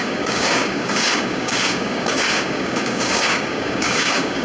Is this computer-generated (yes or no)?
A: yes